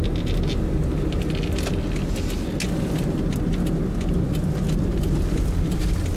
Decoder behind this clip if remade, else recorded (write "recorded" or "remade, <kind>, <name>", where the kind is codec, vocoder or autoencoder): recorded